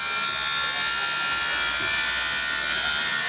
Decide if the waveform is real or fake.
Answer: real